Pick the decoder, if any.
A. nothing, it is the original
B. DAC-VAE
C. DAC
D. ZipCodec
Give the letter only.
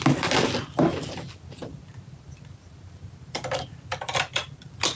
A